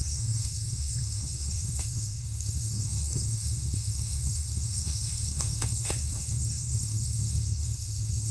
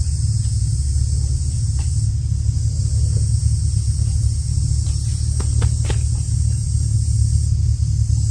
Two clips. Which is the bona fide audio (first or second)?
second